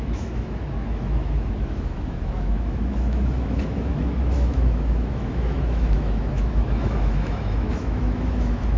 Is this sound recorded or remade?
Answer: remade